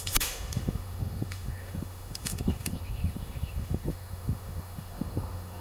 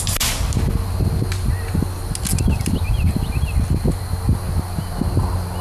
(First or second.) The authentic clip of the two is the second